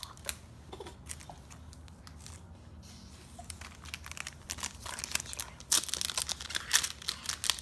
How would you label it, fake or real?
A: real